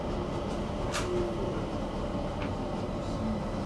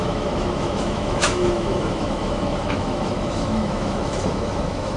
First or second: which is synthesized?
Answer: second